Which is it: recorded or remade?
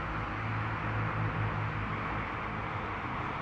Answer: recorded